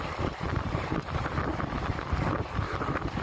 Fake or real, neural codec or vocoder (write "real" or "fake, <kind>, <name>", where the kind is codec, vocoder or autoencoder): real